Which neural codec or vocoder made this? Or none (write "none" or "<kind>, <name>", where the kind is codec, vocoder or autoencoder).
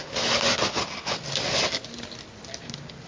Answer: none